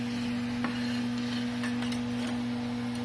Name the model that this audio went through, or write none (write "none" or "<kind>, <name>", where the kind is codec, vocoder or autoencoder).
none